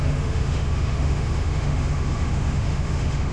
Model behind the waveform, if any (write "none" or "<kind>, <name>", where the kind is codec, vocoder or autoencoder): autoencoder, DAC-VAE